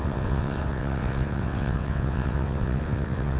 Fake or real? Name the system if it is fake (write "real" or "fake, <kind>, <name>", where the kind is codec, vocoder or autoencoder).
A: fake, vocoder, WaveNeXt